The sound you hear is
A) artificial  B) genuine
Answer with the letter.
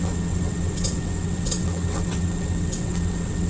A